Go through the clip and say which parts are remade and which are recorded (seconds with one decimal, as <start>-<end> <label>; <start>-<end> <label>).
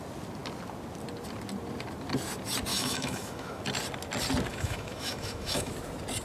0.0-2.7 recorded; 2.7-3.6 remade; 3.6-4.5 recorded; 4.5-5.7 remade; 5.7-6.2 recorded